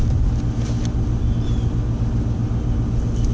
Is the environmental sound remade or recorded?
recorded